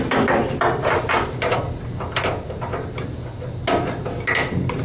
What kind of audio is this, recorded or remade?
recorded